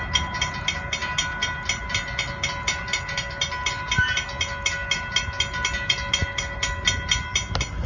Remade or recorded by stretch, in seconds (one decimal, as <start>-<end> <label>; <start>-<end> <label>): 0.0-7.9 recorded